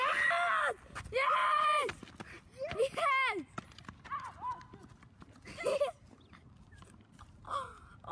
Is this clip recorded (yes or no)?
yes